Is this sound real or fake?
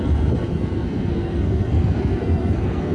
fake